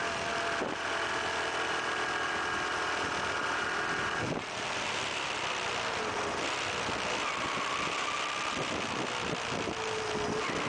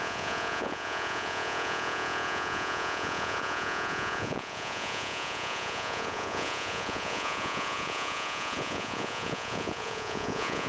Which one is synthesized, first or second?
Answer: second